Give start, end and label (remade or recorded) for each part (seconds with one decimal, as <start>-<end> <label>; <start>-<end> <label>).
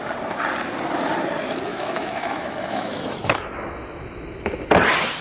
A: 0.0-1.7 recorded; 1.7-4.8 remade; 4.8-5.2 recorded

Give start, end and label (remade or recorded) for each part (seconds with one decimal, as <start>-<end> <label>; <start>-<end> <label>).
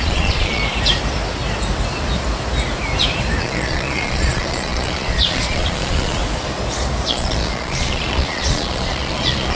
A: 0.0-0.6 remade; 0.6-3.4 recorded; 3.4-6.2 remade; 6.2-7.1 recorded; 7.1-9.5 remade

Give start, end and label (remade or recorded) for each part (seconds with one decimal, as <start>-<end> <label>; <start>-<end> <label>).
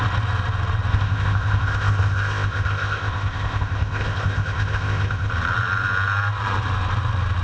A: 0.0-0.9 recorded; 0.9-5.3 remade; 5.3-7.4 recorded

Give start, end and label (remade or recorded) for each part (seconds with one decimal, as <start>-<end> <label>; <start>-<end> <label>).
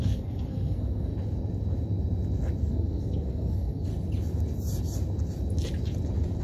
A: 0.0-1.1 remade; 1.1-2.6 recorded; 2.6-3.9 remade; 3.9-6.4 recorded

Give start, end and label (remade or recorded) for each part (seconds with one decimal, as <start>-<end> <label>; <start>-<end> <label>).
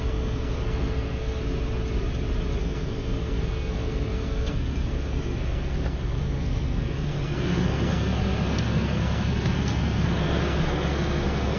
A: 0.0-1.4 remade; 1.4-2.6 recorded; 2.6-11.6 remade